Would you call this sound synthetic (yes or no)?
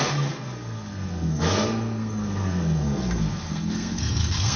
yes